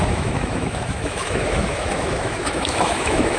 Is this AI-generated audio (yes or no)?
yes